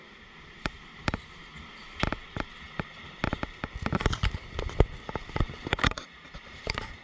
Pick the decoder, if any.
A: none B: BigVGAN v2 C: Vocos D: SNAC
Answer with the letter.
B